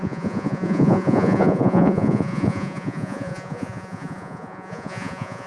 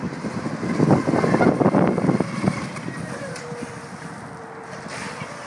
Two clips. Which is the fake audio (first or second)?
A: first